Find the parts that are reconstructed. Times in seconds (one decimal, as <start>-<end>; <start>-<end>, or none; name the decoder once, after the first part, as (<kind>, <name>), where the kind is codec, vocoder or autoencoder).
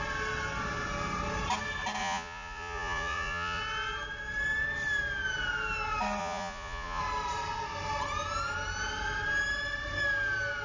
2.0-3.6 (vocoder, Vocos); 6.2-7.0